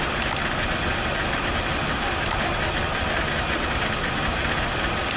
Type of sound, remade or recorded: recorded